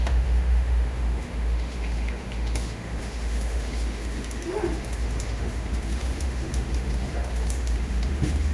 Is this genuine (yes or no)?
no